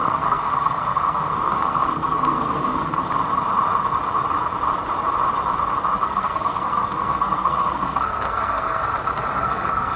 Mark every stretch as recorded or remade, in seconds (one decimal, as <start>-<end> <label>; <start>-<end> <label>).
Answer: 0.0-3.0 remade; 3.0-6.0 recorded; 6.0-8.8 remade; 8.8-9.4 recorded; 9.4-10.0 remade